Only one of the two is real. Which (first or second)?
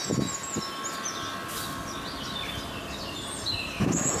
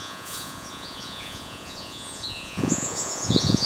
first